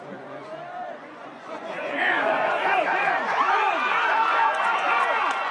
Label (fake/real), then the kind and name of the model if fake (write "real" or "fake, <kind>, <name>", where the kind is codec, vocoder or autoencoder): fake, vocoder, Vocos